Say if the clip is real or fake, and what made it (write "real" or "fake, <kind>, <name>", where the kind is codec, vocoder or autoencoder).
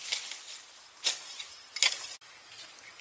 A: real